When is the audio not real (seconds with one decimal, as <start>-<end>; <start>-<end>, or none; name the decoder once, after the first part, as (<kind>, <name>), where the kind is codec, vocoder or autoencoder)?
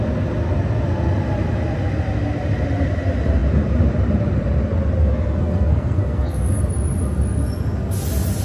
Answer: 5.0-6.6 (codec, SNAC)